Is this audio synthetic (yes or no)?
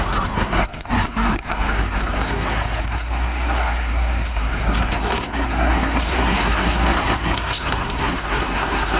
yes